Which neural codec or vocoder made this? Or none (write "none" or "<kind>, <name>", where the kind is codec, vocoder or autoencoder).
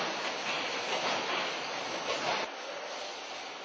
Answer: none